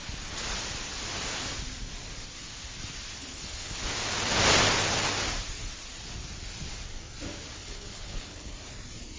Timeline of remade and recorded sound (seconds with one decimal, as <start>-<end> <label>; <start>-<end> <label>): 0.0-3.2 recorded; 3.2-3.8 remade; 3.8-7.6 recorded; 7.6-8.5 remade; 8.5-9.2 recorded